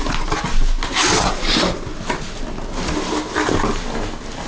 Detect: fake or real real